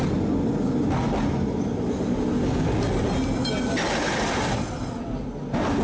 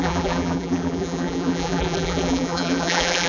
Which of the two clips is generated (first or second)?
second